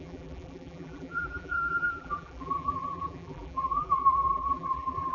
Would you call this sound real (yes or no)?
no